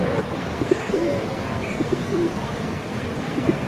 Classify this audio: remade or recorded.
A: remade